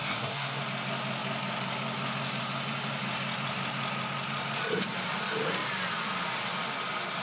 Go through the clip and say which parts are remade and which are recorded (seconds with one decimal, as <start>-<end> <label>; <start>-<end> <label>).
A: 0.0-0.6 remade; 0.6-7.2 recorded